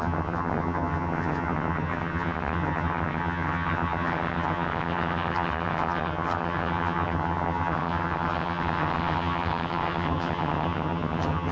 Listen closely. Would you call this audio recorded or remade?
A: remade